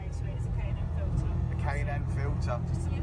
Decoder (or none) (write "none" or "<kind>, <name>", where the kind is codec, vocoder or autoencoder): none